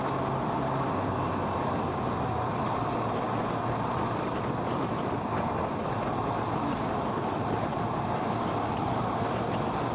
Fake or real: real